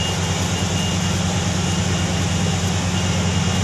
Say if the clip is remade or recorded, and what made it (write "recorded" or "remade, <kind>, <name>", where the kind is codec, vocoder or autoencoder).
recorded